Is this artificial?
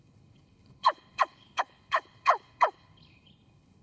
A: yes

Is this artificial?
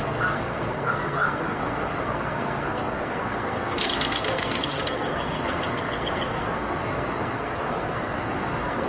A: yes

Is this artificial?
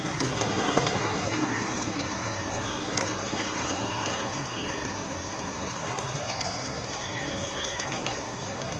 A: yes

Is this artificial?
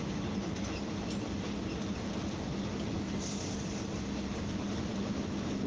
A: no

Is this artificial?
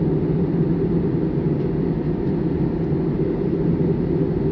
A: no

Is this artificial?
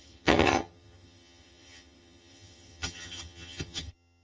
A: yes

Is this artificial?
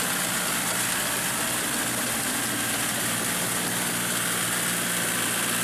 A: no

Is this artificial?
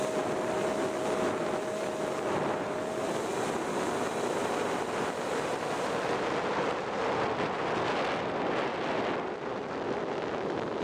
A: no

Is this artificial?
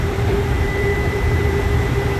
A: yes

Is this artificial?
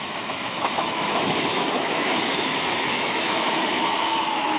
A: yes